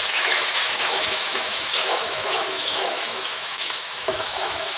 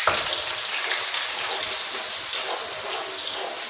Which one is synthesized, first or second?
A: first